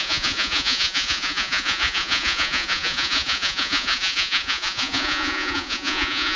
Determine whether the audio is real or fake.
fake